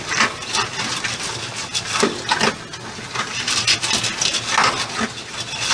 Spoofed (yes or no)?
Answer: no